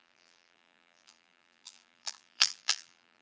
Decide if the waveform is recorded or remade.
remade